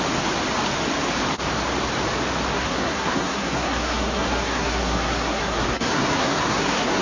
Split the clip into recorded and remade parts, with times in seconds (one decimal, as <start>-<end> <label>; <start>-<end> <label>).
0.0-2.5 recorded; 2.5-7.0 remade